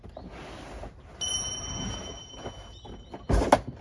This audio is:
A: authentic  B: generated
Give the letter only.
A